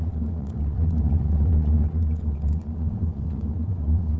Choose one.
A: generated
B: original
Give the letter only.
A